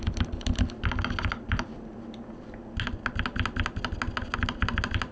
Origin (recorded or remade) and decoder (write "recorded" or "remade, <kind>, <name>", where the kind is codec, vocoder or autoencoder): recorded